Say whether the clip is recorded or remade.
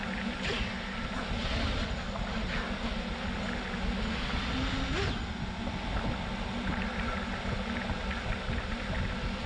recorded